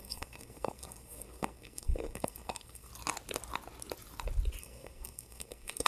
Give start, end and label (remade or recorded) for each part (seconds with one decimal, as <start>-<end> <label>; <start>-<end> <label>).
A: 0.0-2.9 remade; 2.9-4.6 recorded; 4.6-5.9 remade